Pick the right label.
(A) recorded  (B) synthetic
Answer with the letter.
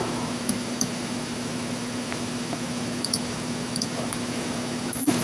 B